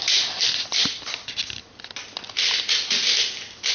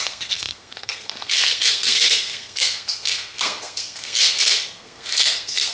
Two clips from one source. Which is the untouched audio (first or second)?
first